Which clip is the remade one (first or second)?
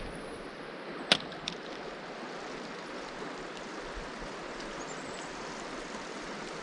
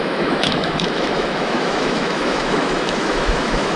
second